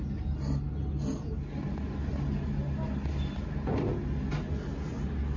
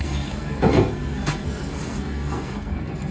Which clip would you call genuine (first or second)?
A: first